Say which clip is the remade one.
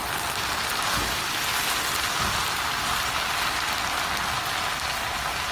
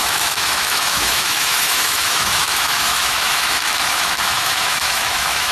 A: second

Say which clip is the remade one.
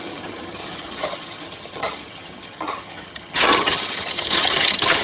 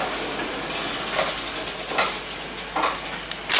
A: first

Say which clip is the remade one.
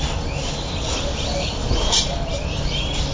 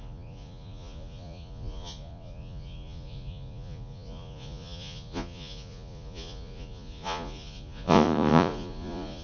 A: second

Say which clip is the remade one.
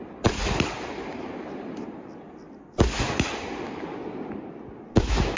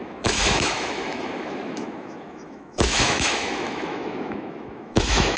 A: second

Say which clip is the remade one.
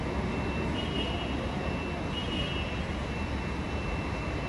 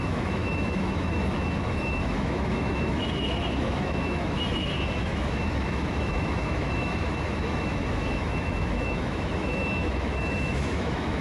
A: second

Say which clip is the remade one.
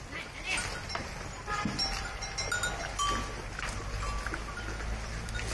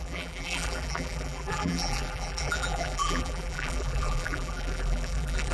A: second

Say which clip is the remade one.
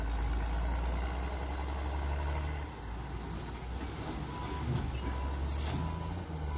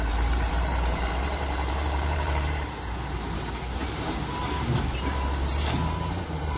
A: second